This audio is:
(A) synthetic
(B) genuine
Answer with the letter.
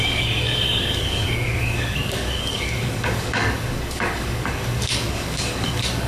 A